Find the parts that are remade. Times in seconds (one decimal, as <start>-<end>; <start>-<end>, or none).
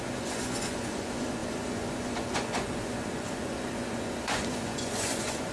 0.0-5.5